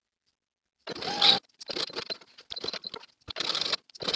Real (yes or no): yes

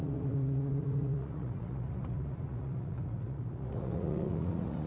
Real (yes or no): no